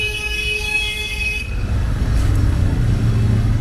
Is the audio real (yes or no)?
no